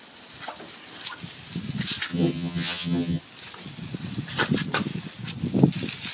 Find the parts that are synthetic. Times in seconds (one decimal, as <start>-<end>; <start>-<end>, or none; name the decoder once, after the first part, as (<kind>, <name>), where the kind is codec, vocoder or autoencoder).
2.1-3.2 (vocoder, HiFi-GAN)